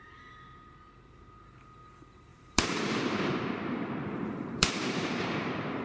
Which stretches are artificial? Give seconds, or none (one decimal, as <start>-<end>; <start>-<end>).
2.3-5.8